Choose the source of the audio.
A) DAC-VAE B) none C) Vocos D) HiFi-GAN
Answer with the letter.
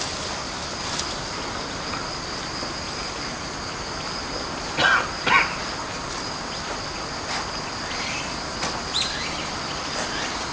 B